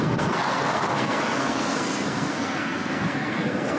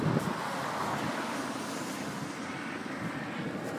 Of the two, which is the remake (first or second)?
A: first